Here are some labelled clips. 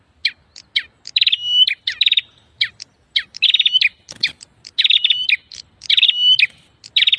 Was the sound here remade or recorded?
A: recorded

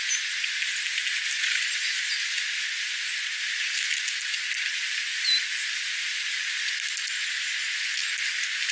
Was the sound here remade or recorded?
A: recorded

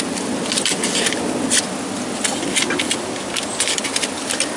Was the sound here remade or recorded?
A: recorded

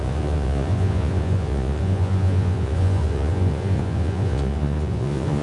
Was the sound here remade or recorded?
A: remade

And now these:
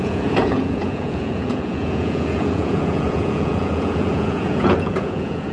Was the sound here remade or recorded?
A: remade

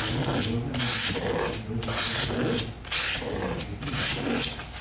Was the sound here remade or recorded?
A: recorded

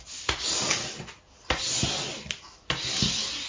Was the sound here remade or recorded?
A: recorded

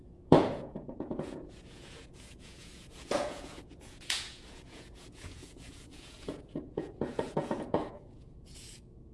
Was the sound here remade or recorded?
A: remade